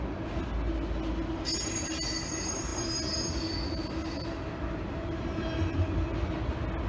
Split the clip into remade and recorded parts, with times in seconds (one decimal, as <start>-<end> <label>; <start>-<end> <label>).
0.0-6.9 recorded